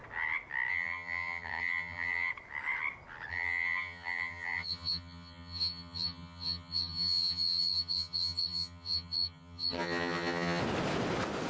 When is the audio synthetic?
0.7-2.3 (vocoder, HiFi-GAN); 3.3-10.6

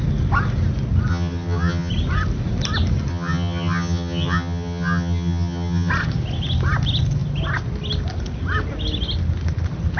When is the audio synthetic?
1.1-1.9 (vocoder, HiFi-GAN); 3.1-5.9

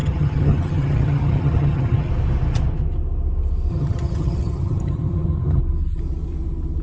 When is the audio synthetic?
0.0-2.1 (vocoder, HiFi-GAN); 3.7-5.6

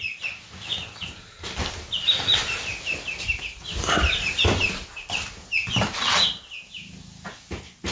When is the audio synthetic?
none

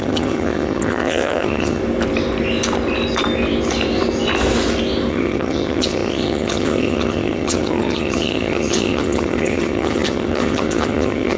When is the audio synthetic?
0.0-1.8 (vocoder, HiFi-GAN); 5.1-11.4

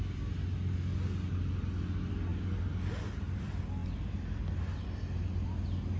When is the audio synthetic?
none